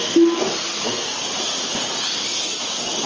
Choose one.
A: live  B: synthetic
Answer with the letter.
A